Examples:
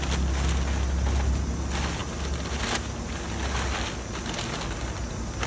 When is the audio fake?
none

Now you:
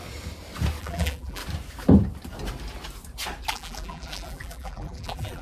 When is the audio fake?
0.8-1.4 (vocoder, BigVGAN v2); 3.5-5.4